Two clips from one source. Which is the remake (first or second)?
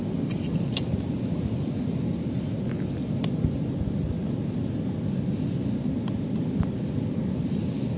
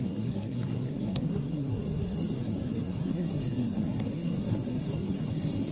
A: second